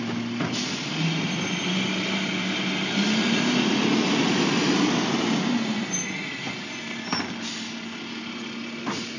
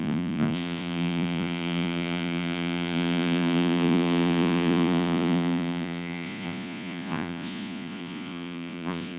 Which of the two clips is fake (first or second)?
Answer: second